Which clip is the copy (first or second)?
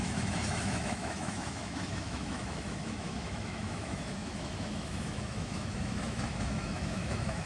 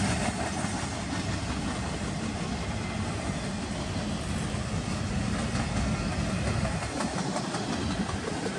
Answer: first